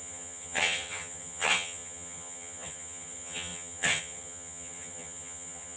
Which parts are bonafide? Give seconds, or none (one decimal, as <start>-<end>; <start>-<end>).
none

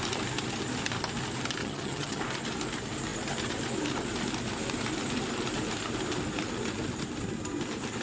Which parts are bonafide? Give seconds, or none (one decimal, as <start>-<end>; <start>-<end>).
0.0-1.6; 2.2-8.0

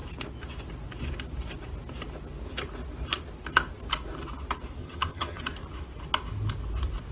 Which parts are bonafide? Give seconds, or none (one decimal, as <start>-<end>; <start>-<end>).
0.0-4.8; 5.4-7.1

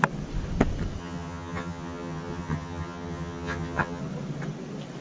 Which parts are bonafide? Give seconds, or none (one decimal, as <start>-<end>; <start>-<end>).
0.0-1.0; 4.0-5.0